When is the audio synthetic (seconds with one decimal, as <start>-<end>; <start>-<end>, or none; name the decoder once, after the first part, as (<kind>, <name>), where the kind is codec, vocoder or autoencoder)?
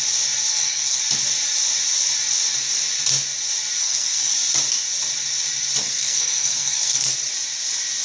0.5-1.0 (codec, SNAC); 3.8-4.3; 5.8-7.1